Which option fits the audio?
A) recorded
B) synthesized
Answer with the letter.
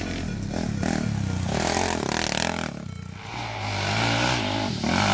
A